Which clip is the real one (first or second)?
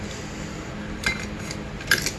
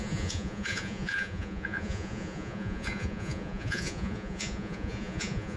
first